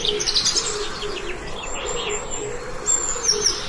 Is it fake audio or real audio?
real